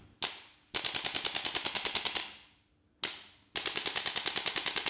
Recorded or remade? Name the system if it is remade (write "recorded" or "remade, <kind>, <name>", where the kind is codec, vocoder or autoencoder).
recorded